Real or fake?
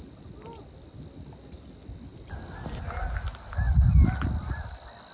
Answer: real